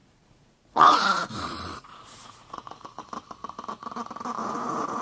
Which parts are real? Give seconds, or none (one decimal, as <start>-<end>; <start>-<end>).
3.0-4.4